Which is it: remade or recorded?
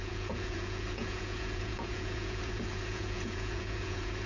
remade